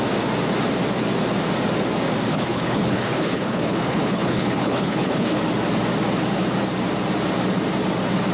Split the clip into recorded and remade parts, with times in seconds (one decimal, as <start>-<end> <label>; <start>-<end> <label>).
0.0-2.3 recorded; 2.3-5.4 remade; 5.4-8.3 recorded